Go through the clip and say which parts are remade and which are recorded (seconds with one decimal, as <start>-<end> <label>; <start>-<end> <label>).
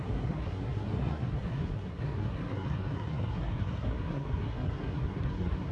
0.0-5.7 remade